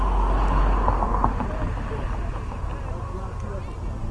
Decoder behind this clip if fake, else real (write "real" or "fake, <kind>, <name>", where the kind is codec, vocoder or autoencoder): real